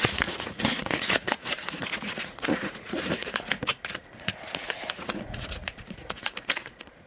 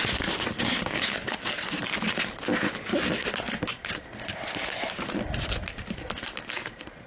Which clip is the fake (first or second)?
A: first